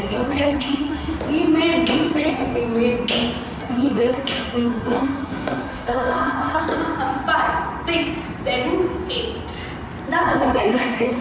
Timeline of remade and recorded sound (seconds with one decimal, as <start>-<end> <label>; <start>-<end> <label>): 0.0-1.1 remade; 1.1-1.9 recorded; 1.9-2.6 remade; 2.6-3.6 recorded; 3.6-6.6 remade; 6.6-10.2 recorded; 10.2-11.2 remade